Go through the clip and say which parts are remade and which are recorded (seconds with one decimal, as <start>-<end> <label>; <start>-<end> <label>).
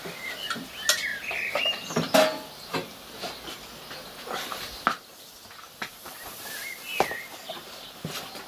0.0-8.5 recorded